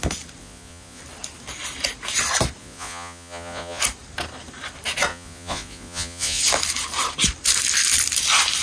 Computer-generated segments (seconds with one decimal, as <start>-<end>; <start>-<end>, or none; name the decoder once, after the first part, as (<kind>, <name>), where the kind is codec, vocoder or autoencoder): 0.4-1.0 (vocoder, Vocos); 2.6-3.8; 5.1-6.4